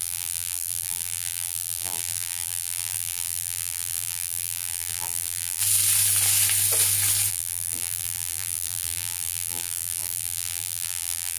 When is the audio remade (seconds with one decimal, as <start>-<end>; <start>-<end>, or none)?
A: 0.0-5.6; 7.3-11.4